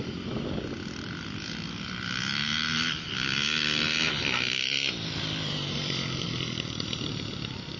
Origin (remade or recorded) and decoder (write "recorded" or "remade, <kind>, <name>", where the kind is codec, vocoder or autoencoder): remade, vocoder, BigVGAN v2